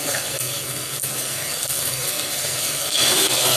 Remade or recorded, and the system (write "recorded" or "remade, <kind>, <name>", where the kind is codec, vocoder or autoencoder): remade, codec, SNAC